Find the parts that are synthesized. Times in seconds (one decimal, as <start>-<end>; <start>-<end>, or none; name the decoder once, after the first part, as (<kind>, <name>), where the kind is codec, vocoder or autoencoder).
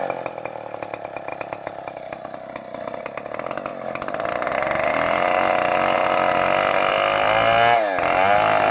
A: 1.3-3.0 (vocoder, BigVGAN v2); 3.7-6.9